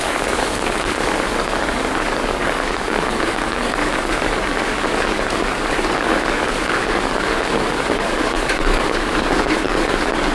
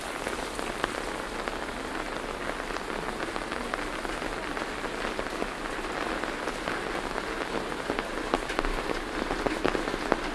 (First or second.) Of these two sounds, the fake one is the first